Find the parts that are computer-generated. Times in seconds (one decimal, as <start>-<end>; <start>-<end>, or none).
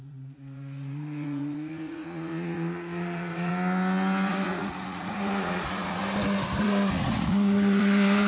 0.0-3.5; 4.3-6.0; 6.6-8.3